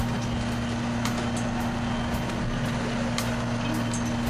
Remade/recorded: recorded